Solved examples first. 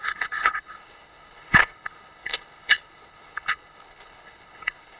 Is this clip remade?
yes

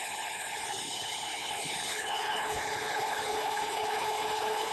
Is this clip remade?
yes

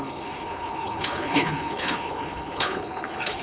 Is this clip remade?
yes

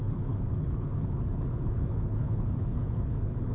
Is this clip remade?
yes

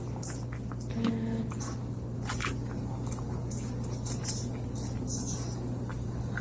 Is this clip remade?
no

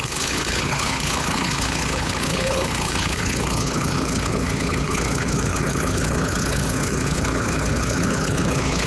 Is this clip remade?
yes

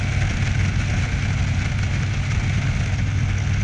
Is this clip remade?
no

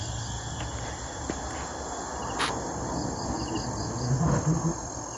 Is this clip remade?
no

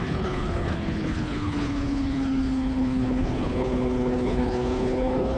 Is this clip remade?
yes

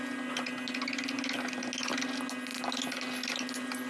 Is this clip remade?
no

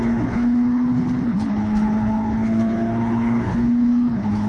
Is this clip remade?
yes